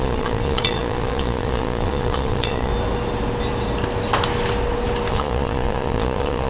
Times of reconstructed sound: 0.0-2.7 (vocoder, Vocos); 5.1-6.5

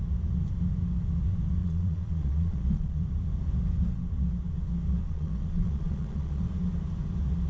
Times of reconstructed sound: 1.6-3.0 (vocoder, Vocos); 5.0-6.4

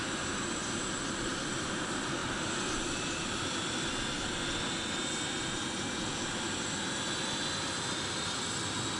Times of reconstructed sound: 2.2-3.9 (vocoder, BigVGAN v2)

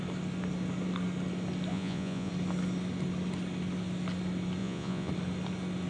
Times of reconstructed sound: 1.7-2.3 (vocoder, Vocos); 4.6-5.1